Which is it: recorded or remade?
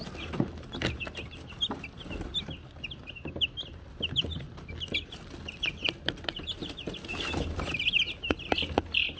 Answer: recorded